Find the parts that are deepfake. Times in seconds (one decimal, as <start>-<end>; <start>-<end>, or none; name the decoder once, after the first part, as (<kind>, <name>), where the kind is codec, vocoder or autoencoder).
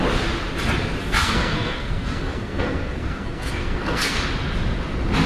1.0-4.2 (codec, SNAC)